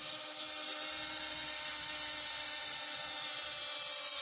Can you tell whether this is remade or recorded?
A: recorded